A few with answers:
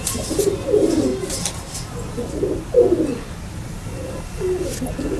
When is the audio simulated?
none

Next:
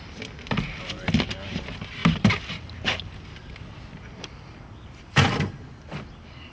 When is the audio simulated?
none

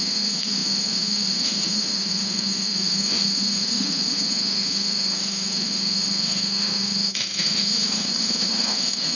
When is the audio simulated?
0.0-9.1 (autoencoder, DAC-VAE)

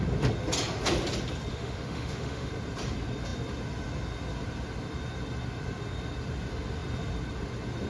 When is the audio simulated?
1.5-2.5 (autoencoder, DAC-VAE)

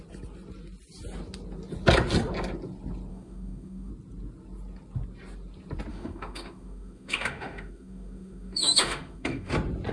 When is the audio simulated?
3.1-3.9 (autoencoder, DAC-VAE); 5.9-9.5